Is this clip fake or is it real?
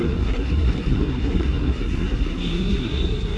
fake